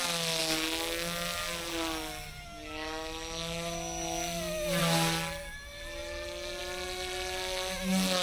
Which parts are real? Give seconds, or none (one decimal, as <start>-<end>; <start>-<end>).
0.0-8.2

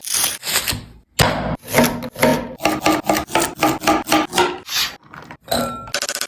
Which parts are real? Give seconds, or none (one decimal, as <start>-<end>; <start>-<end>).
0.0-6.3

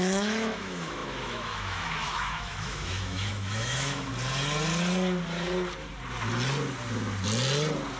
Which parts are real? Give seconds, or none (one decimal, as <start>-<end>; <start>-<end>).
4.1-8.0

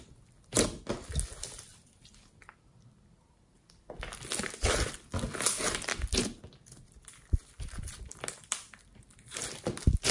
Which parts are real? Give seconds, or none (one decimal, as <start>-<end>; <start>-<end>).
0.0-10.1

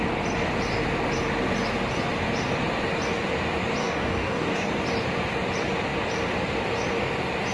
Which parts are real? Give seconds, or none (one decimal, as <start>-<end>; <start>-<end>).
0.0-3.8; 4.7-7.5